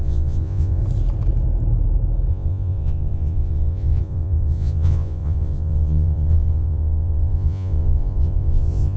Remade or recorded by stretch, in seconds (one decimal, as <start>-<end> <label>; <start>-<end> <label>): 0.0-0.8 remade; 0.8-2.3 recorded; 2.3-9.0 remade